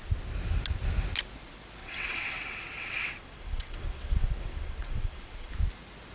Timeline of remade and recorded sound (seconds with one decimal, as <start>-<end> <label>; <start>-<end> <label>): 0.0-1.8 recorded; 1.8-5.5 remade; 5.5-6.1 recorded